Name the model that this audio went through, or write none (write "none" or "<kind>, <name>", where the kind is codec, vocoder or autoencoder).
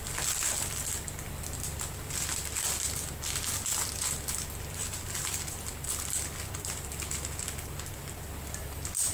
none